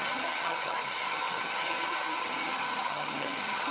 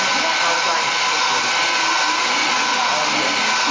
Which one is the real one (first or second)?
second